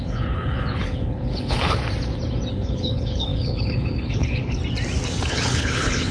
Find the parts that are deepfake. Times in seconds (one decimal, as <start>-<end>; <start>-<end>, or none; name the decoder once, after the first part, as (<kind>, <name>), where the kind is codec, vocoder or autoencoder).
0.0-1.8 (codec, HILCodec); 2.5-4.6; 5.2-6.1